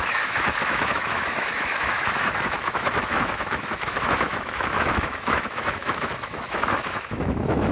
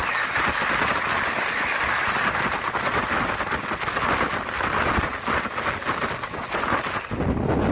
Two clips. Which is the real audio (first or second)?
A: second